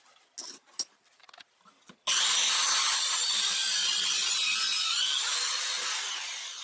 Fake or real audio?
real